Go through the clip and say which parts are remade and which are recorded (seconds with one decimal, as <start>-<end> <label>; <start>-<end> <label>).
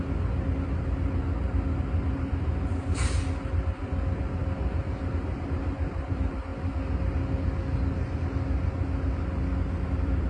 0.0-10.3 recorded